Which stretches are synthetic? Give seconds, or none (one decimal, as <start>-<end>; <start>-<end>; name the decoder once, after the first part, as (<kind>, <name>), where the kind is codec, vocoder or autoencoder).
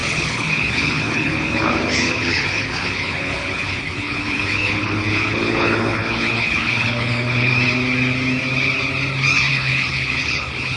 0.0-7.5 (codec, HILCodec); 9.5-10.8